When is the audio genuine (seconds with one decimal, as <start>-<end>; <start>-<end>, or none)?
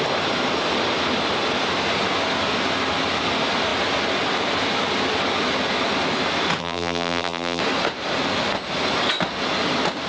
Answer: 0.0-6.6; 7.6-10.1